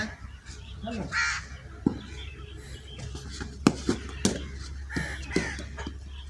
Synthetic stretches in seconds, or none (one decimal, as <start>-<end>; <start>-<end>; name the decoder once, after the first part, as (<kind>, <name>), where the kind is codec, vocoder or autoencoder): 2.3-3.0 (vocoder, BigVGAN v2)